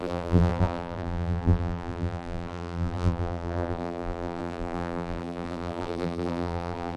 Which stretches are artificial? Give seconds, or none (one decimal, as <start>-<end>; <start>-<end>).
0.0-7.0